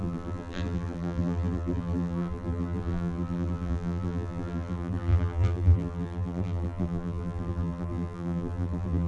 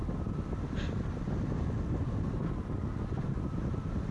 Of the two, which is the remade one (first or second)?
first